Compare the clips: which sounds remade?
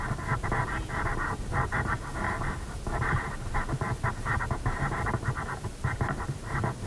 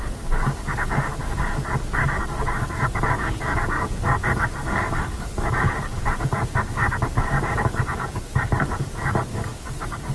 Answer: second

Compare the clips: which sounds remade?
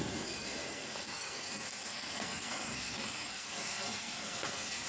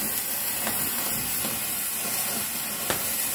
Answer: first